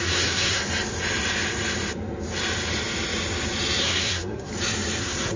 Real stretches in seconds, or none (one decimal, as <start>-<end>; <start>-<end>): 0.6-3.8; 4.5-5.0